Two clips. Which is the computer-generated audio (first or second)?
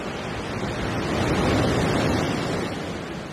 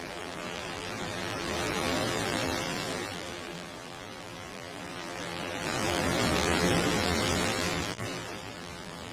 second